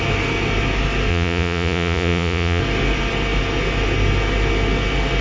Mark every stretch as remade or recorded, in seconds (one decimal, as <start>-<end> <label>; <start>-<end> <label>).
0.0-1.1 recorded; 1.1-2.6 remade; 2.6-5.2 recorded